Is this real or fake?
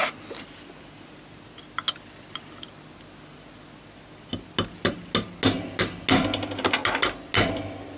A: real